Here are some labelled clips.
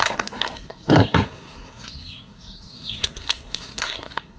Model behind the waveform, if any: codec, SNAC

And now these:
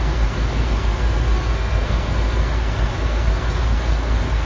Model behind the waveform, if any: codec, SNAC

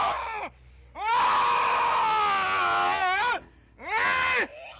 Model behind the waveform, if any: none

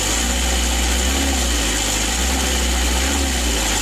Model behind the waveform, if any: none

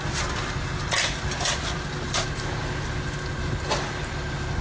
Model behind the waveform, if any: none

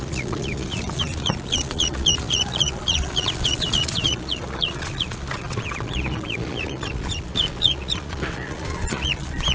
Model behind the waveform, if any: vocoder, Vocos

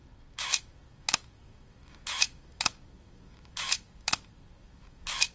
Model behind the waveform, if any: autoencoder, DAC-VAE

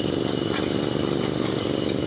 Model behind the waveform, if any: none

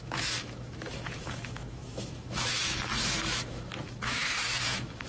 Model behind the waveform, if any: autoencoder, DAC-VAE